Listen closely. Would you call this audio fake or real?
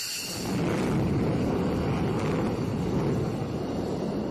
real